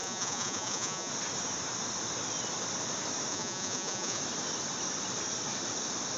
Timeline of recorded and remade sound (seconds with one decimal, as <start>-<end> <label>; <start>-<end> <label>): 0.0-1.1 remade; 1.1-3.3 recorded; 3.3-4.2 remade; 4.2-6.2 recorded